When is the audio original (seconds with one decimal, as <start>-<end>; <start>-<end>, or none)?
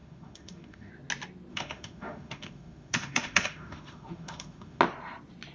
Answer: 0.9-1.5; 4.8-5.5